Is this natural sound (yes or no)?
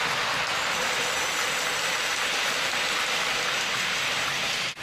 yes